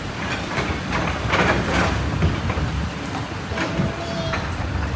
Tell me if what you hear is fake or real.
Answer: fake